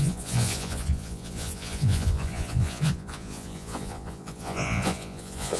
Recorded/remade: remade